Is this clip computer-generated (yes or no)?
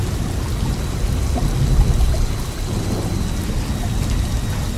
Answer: no